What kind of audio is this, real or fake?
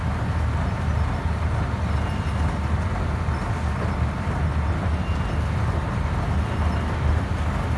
real